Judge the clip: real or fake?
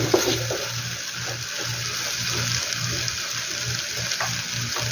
real